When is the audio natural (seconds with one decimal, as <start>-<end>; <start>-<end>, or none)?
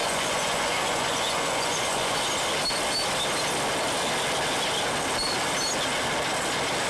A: 2.2-6.9